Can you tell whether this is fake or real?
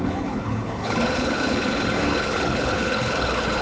fake